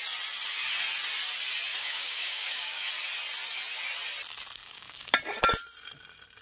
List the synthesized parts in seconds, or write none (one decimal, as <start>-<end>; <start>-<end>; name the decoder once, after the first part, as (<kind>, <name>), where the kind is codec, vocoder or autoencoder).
1.7-2.9 (codec, DAC); 4.6-5.1